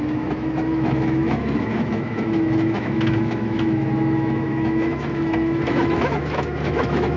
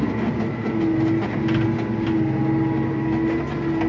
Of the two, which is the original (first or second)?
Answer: second